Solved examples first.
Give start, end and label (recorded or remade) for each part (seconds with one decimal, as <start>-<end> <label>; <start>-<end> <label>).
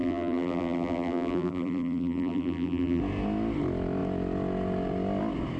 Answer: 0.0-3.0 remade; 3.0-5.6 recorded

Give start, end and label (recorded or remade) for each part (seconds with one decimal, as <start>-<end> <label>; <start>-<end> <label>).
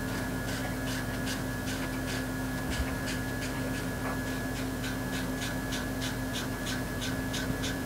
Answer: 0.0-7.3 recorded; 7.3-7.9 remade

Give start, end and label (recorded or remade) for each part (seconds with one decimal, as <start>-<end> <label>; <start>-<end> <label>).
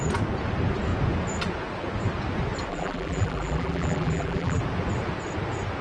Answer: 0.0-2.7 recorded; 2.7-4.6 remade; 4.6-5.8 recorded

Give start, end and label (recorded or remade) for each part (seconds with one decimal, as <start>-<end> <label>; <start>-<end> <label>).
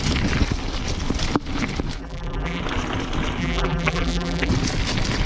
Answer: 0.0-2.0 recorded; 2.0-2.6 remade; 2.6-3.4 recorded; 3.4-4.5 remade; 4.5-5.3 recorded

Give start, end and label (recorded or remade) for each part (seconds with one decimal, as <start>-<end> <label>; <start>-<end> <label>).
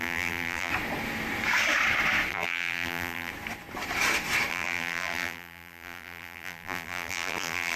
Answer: 0.0-0.7 remade; 0.7-2.3 recorded; 2.3-3.3 remade; 3.3-4.5 recorded; 4.5-7.8 remade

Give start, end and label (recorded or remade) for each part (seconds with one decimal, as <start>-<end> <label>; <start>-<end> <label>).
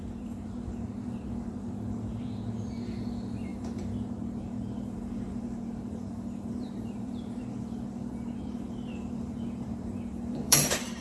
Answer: 0.0-11.0 remade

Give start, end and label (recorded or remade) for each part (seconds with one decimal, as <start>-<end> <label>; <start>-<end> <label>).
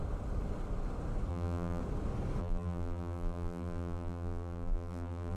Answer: 0.0-1.3 recorded; 1.3-1.8 remade; 1.8-2.4 recorded; 2.4-5.4 remade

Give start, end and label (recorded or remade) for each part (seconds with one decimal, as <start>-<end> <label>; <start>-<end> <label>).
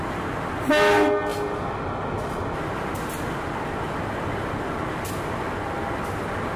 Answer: 0.0-6.6 recorded